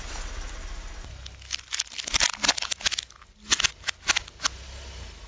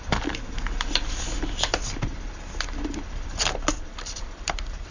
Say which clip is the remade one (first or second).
second